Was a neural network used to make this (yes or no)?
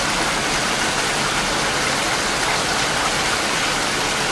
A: no